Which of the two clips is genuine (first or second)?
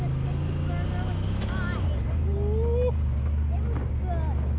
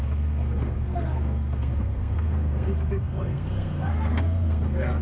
first